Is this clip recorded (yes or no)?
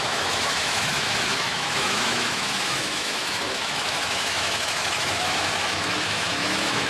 no